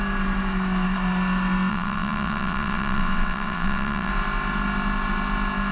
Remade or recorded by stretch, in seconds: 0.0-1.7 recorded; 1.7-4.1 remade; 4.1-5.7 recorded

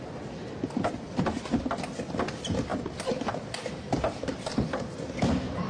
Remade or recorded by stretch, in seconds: 0.0-5.7 recorded